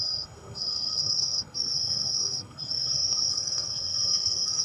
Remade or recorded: remade